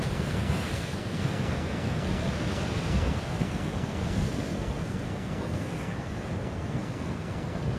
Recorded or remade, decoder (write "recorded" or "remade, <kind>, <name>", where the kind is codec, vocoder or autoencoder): remade, codec, SNAC